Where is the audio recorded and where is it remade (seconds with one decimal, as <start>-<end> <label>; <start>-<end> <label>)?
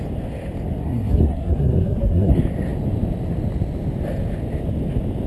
0.0-0.8 recorded; 0.8-2.3 remade; 2.3-5.3 recorded